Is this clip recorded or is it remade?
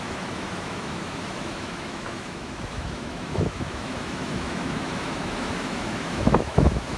remade